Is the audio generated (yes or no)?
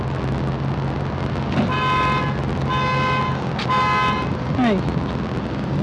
no